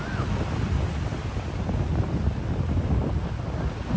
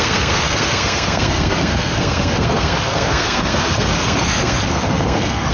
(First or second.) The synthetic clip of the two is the second